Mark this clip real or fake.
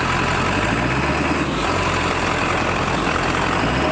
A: real